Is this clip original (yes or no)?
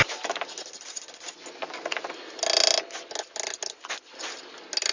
yes